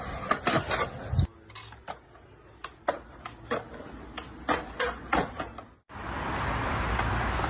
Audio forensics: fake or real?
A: real